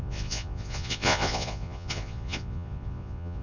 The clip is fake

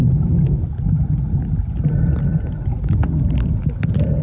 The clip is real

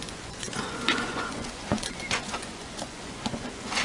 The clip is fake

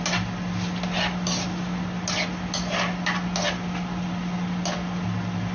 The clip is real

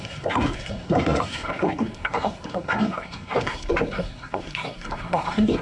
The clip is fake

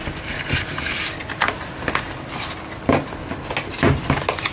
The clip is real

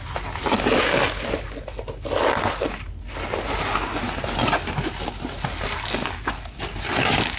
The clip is real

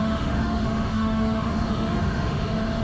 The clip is fake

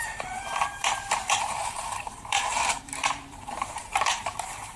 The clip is fake